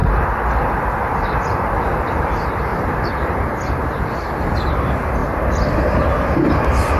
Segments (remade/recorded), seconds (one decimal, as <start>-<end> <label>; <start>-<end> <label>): 0.0-0.5 remade; 0.5-7.0 recorded